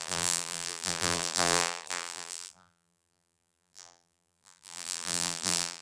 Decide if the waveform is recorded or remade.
remade